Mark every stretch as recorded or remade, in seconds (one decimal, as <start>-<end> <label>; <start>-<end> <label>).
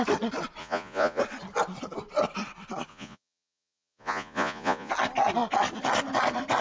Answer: 0.0-0.6 recorded; 0.6-1.2 remade; 1.2-2.9 recorded; 2.9-4.9 remade; 4.9-6.6 recorded